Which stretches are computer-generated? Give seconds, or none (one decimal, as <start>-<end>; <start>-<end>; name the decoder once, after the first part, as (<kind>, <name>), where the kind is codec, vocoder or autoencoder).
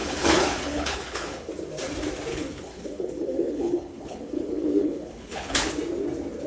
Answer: 0.0-1.5 (codec, HILCodec); 2.3-5.7